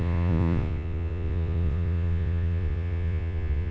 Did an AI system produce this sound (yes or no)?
yes